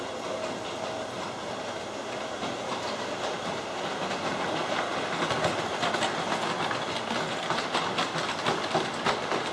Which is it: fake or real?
real